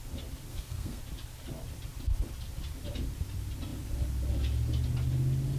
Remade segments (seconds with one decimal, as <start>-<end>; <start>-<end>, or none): 0.5-1.0